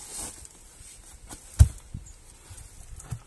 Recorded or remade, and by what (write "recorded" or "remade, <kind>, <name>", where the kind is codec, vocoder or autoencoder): recorded